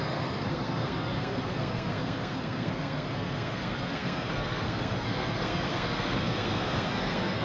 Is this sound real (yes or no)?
no